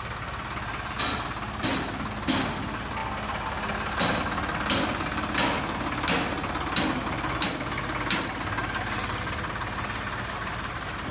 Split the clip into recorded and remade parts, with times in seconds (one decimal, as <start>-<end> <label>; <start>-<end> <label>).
0.0-11.1 recorded